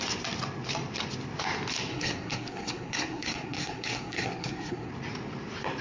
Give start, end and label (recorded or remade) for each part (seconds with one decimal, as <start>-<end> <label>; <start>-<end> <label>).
0.0-1.9 recorded; 1.9-4.9 remade; 4.9-5.8 recorded

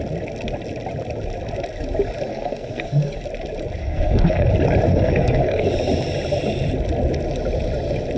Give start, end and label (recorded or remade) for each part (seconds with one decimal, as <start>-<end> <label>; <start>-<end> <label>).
0.0-2.3 recorded; 2.3-3.2 remade; 3.2-3.8 recorded; 3.8-4.5 remade; 4.5-4.9 recorded; 4.9-5.7 remade; 5.7-8.2 recorded

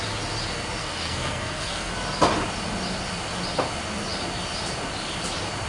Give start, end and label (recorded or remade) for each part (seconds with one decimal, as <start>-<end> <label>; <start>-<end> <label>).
0.0-0.8 recorded; 0.8-1.9 remade; 1.9-5.7 recorded